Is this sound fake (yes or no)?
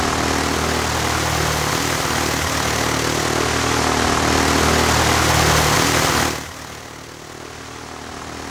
no